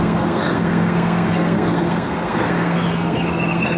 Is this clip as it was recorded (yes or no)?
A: no